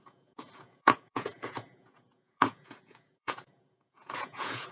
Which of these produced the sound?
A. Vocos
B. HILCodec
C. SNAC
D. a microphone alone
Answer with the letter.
A